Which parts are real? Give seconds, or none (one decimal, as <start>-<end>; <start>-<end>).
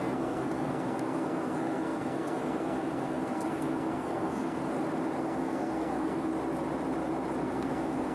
4.6-5.2; 6.3-7.4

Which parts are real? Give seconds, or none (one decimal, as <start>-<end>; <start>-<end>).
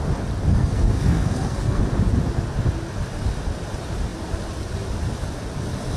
0.0-0.5; 1.8-6.0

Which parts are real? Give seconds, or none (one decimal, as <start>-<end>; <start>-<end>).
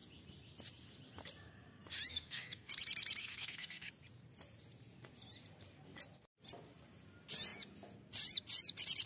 0.0-2.1; 2.7-3.2; 3.9-9.1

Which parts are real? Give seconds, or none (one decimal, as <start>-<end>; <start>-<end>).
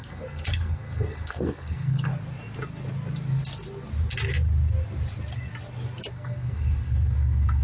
2.1-6.1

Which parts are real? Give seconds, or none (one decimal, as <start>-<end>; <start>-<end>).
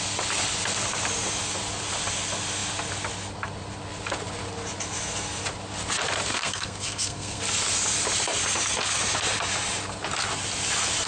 0.0-6.3; 7.4-11.1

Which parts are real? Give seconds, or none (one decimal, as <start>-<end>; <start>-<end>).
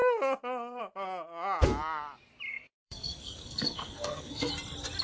0.0-2.5; 4.5-5.0